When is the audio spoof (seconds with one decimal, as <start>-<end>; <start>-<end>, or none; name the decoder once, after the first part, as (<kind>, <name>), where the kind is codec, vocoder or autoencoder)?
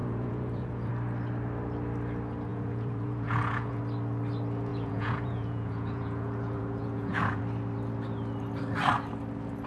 0.0-0.9 (vocoder, Vocos); 2.5-3.8; 4.7-7.4